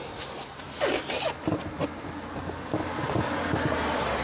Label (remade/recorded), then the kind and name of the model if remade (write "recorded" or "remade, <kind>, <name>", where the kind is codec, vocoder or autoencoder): recorded